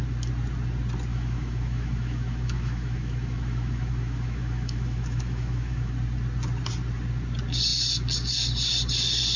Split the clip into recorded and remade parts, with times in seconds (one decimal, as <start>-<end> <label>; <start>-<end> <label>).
0.0-1.1 recorded; 1.1-5.9 remade; 5.9-9.4 recorded